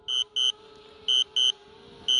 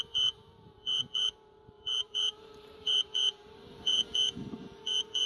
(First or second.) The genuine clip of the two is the first